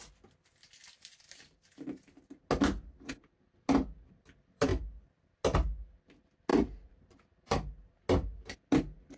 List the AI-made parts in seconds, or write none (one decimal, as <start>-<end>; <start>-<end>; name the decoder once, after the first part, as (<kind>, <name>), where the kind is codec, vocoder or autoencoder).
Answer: 6.5-8.0 (vocoder, BigVGAN v2)

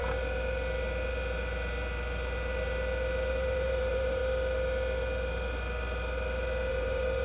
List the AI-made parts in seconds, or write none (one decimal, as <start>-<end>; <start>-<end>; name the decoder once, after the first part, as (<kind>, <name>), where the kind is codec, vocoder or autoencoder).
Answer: 3.3-4.2 (vocoder, BigVGAN v2); 6.7-7.2

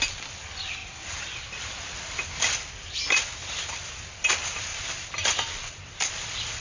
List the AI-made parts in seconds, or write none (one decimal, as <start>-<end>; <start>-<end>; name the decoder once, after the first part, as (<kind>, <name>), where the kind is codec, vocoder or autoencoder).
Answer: 0.8-2.3 (vocoder, BigVGAN v2); 3.4-3.9

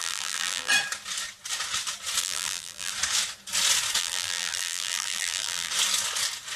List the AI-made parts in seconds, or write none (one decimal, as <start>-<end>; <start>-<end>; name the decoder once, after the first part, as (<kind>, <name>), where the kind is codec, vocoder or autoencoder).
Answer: 0.0-0.7 (vocoder, BigVGAN v2); 2.2-2.9; 4.0-5.7

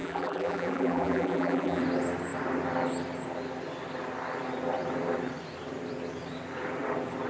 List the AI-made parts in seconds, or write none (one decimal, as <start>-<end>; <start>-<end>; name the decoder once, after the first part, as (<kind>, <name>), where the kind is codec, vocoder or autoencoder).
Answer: 0.0-1.8 (vocoder, BigVGAN v2)

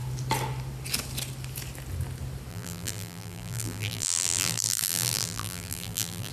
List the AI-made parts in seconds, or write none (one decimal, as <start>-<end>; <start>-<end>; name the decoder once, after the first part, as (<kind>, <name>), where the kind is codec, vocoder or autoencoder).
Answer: 2.5-6.3 (vocoder, BigVGAN v2)

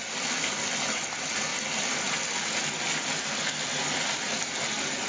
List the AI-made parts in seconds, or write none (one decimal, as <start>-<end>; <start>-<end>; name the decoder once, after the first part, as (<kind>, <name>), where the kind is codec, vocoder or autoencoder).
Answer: none

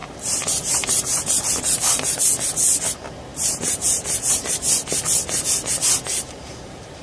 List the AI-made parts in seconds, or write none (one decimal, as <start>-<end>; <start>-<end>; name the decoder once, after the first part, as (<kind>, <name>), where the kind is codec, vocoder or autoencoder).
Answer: 0.0-2.3 (vocoder, BigVGAN v2); 3.3-4.5; 6.1-7.0